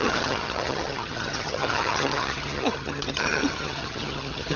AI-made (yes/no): yes